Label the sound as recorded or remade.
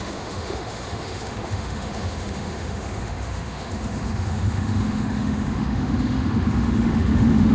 remade